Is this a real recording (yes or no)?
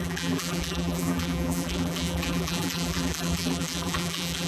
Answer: no